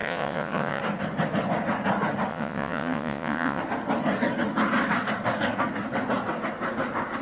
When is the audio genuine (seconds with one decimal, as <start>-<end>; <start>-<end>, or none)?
0.8-2.3; 3.6-7.2